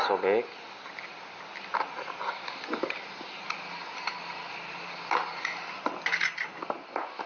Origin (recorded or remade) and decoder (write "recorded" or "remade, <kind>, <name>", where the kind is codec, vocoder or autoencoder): recorded